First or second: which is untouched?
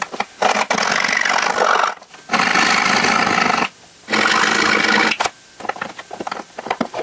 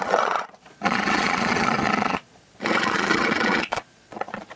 first